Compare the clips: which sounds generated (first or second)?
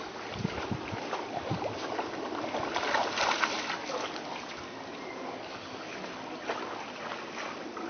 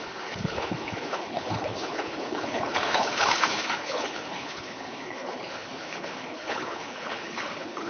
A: second